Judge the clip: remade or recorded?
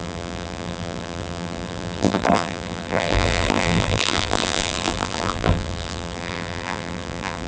remade